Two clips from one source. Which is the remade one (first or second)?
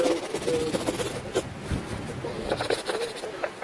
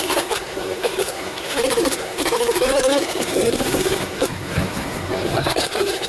second